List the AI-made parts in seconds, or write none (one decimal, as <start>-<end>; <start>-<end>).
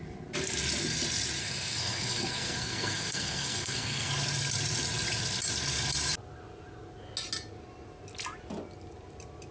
1.4-4.1